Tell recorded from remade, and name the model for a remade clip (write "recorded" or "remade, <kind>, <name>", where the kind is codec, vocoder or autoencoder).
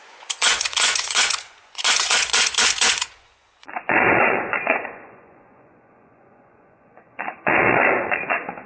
remade, vocoder, Vocos